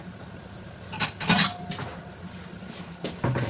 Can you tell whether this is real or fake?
real